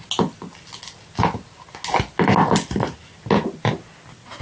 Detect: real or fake real